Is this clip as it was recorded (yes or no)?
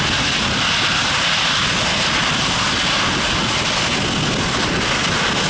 yes